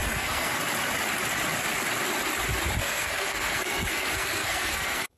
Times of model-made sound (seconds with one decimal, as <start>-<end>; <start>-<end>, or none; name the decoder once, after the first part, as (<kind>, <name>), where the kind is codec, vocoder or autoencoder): 0.0-0.6 (codec, SNAC); 2.8-5.2